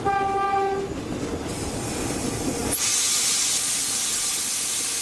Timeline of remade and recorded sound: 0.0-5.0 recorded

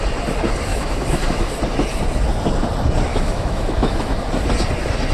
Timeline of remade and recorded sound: 0.0-0.7 recorded; 0.7-1.5 remade; 1.5-3.1 recorded; 3.1-4.2 remade; 4.2-5.1 recorded

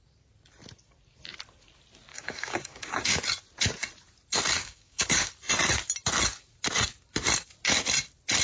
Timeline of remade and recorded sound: 0.0-2.1 recorded; 2.1-3.2 remade; 3.2-4.6 recorded; 4.6-5.3 remade; 5.3-8.4 recorded

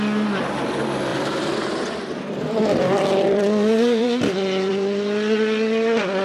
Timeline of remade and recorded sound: 0.0-1.1 recorded; 1.1-4.7 remade; 4.7-6.2 recorded

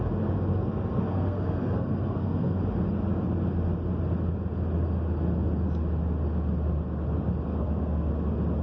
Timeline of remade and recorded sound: 0.0-0.5 recorded; 0.5-2.6 remade; 2.6-7.5 recorded; 7.5-8.1 remade; 8.1-8.6 recorded

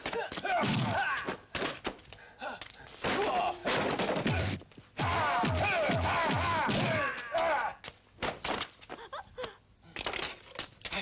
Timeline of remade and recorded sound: 0.0-0.7 remade; 0.7-11.0 recorded

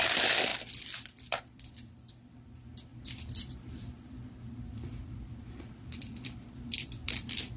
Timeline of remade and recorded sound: 0.0-0.5 recorded; 0.5-1.4 remade; 1.4-2.9 recorded; 2.9-6.9 remade; 6.9-7.6 recorded

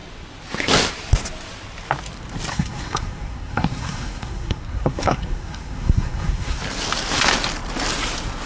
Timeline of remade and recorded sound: 0.0-2.5 recorded; 2.5-6.6 remade; 6.6-8.5 recorded